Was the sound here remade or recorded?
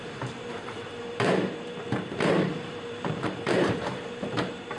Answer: remade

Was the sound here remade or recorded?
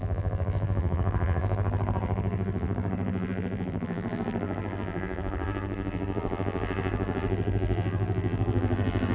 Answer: remade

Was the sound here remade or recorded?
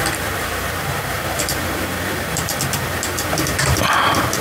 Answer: remade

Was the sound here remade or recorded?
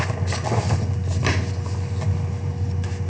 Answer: recorded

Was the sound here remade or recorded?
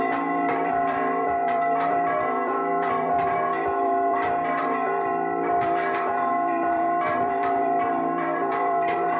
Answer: remade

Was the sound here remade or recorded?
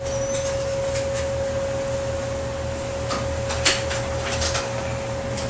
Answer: recorded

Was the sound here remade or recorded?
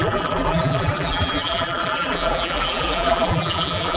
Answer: remade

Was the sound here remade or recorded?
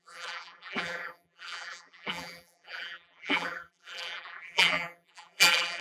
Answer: remade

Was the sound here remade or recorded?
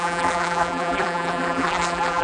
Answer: remade